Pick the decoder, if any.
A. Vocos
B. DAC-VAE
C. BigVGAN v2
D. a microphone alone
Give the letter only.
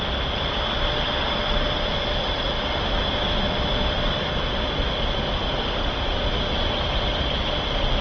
C